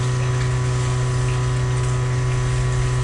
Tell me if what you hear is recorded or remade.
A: recorded